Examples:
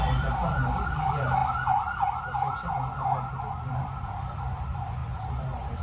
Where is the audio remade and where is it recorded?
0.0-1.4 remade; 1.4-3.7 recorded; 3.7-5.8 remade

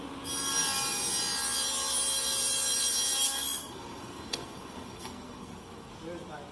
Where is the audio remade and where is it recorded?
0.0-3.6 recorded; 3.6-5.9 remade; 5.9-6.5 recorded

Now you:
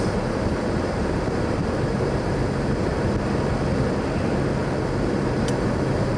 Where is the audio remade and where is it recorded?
0.0-2.9 remade; 2.9-5.2 recorded; 5.2-6.2 remade